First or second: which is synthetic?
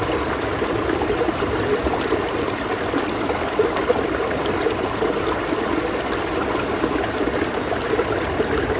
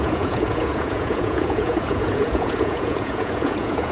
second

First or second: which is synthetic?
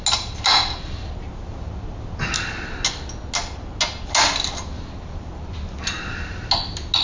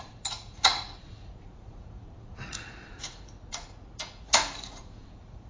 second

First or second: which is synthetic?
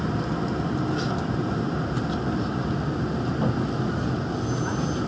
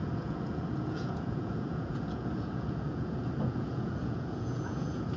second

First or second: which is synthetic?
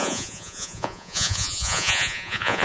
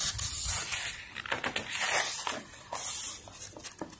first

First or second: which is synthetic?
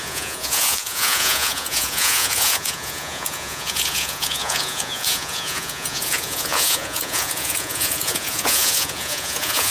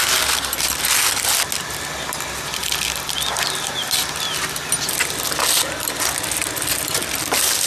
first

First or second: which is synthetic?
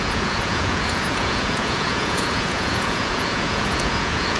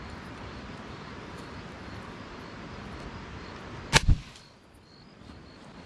first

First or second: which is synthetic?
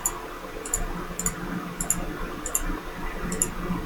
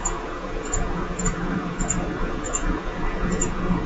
second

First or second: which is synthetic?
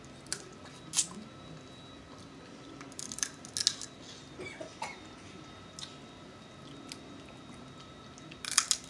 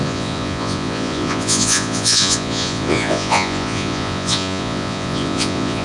second